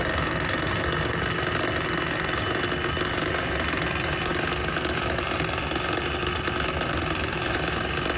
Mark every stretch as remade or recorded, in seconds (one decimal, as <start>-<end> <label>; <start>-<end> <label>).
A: 0.0-8.2 recorded